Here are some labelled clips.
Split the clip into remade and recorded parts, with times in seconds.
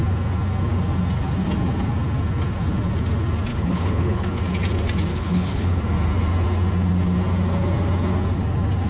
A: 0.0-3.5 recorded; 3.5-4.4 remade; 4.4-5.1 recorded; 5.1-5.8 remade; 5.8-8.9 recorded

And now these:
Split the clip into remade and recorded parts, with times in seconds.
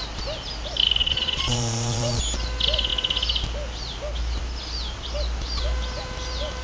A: 0.0-1.0 recorded; 1.0-2.2 remade; 2.2-6.6 recorded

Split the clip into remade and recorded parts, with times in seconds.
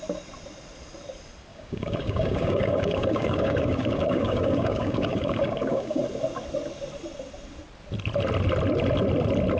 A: 0.0-1.5 recorded; 1.5-6.0 remade; 6.0-9.6 recorded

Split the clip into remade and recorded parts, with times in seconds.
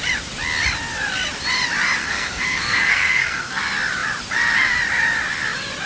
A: 0.0-2.0 recorded; 2.0-3.6 remade; 3.6-5.9 recorded